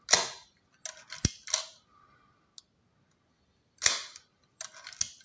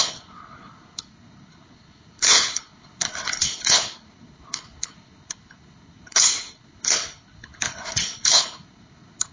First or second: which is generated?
second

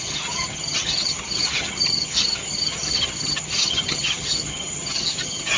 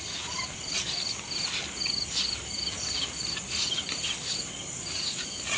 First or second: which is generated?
first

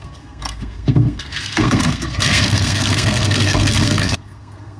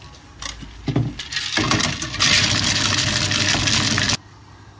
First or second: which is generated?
first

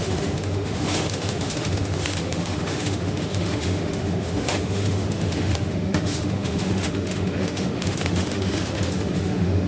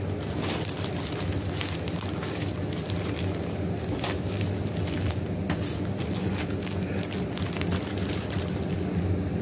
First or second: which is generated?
first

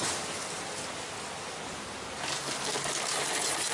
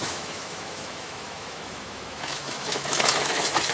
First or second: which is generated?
second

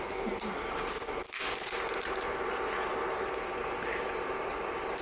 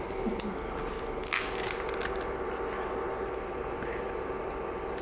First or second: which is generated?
first